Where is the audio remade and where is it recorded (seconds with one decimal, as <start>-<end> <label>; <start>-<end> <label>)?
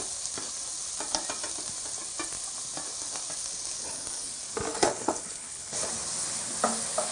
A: 0.0-4.7 recorded; 4.7-5.9 remade; 5.9-7.1 recorded